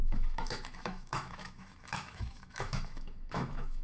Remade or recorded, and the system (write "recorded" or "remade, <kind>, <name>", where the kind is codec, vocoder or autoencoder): remade, autoencoder, DAC-VAE